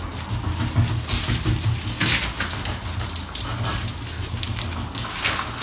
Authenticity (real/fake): real